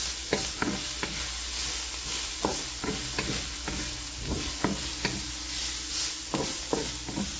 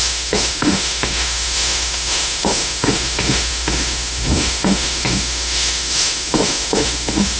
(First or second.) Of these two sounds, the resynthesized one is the second